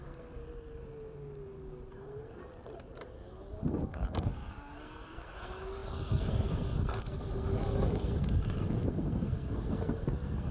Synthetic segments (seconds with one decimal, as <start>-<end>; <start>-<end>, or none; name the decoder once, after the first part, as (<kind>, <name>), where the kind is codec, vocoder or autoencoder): 0.0-0.4 (codec, SNAC); 1.9-2.4; 3.6-10.5